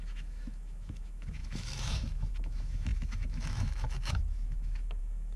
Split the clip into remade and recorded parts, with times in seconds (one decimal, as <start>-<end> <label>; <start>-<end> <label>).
0.0-5.4 remade